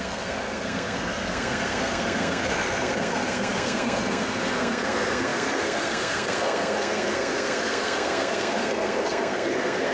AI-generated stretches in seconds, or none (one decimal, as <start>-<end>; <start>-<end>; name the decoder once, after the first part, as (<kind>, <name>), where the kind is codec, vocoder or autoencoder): 0.0-9.9 (codec, SNAC)